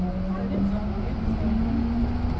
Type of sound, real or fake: real